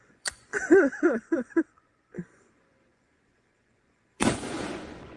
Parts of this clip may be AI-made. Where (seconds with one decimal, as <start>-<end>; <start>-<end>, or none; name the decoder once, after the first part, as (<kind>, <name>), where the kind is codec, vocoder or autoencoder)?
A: 0.0-5.2 (vocoder, Vocos)